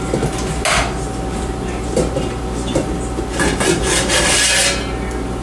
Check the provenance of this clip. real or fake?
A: real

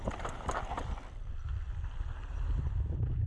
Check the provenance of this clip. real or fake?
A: fake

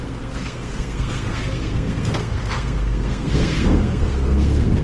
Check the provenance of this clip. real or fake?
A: fake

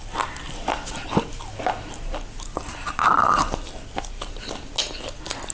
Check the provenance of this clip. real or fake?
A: real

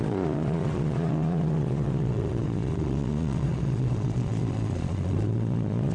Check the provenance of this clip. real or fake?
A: fake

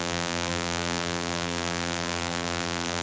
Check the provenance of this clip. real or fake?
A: fake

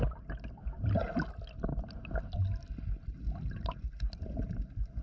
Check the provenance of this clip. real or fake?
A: real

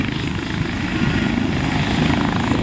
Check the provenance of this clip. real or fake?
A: real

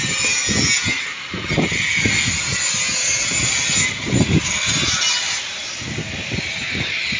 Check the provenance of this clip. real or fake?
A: real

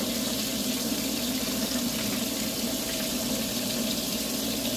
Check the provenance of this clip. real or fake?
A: fake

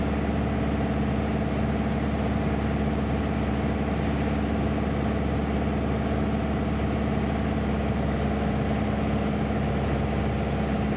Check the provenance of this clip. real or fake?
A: real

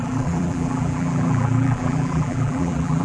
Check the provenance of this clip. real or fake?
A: fake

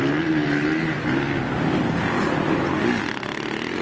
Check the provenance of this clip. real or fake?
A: real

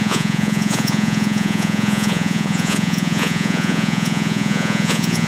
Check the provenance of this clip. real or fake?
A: fake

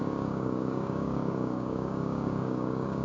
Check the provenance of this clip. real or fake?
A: fake